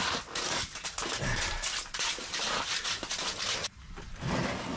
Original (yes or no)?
yes